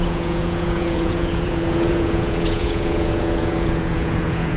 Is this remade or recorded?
remade